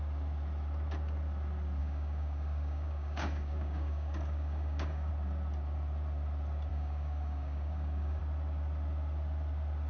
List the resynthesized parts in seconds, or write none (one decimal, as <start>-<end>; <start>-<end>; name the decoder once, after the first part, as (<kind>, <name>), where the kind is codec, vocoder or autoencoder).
1.8-5.1 (codec, DAC); 6.7-8.2